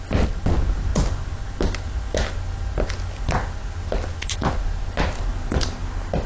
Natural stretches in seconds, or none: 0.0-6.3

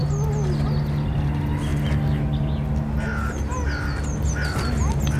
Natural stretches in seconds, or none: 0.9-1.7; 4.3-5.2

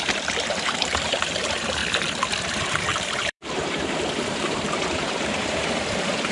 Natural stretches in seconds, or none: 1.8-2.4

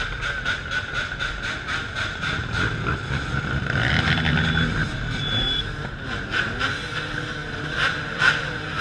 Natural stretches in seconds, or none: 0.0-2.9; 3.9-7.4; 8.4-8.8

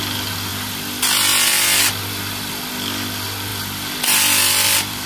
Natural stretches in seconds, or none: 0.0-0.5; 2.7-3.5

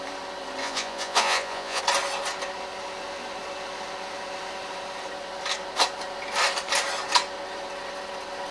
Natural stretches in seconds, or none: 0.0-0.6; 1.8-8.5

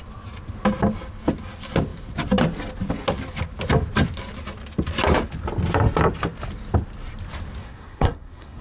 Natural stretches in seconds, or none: 0.0-7.6